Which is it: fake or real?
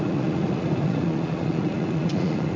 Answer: fake